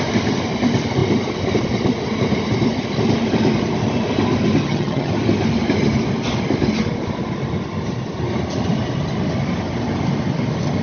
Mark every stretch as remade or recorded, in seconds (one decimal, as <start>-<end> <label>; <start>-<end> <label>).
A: 0.0-4.6 recorded; 4.6-5.1 remade; 5.1-10.8 recorded